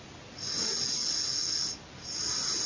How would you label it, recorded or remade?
recorded